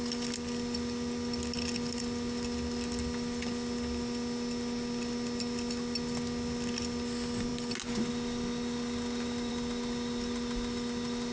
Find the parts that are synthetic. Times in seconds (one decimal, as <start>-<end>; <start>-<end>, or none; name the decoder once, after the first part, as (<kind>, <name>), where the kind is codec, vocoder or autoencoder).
none